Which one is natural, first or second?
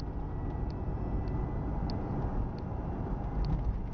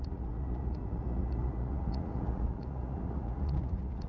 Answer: first